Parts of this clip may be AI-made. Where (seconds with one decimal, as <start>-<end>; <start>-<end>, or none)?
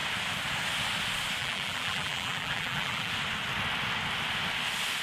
1.4-3.1